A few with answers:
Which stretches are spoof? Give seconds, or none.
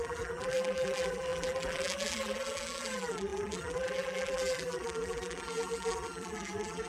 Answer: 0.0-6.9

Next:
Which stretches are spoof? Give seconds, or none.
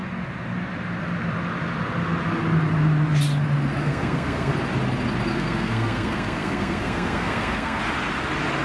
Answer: 3.8-4.5; 5.3-7.8